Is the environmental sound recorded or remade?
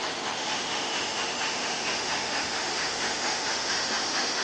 remade